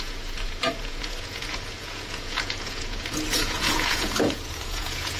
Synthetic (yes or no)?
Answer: yes